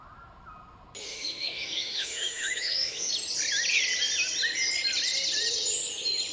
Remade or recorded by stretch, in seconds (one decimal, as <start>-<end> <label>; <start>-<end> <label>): 0.0-1.0 recorded; 1.0-3.1 remade; 3.1-6.3 recorded